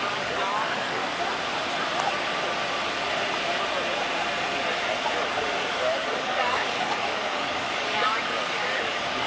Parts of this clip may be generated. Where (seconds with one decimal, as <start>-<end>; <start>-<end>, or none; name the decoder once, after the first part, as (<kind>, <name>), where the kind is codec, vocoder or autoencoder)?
0.0-1.0 (codec, DAC); 5.3-9.3